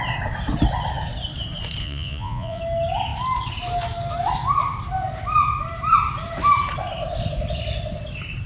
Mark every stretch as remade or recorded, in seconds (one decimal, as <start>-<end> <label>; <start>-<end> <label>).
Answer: 0.0-1.8 recorded; 1.8-2.6 remade; 2.6-8.5 recorded